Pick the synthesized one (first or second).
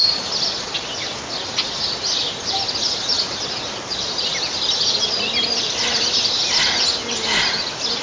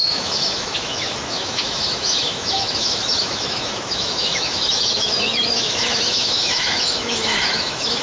second